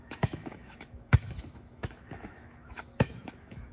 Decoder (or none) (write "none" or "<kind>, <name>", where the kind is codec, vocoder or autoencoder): autoencoder, DAC-VAE